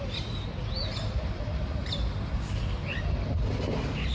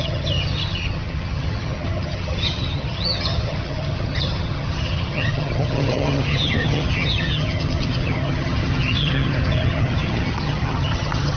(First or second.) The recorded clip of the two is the first